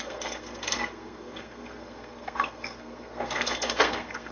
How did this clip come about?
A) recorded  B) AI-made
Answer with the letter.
B